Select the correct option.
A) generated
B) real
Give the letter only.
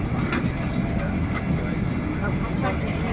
B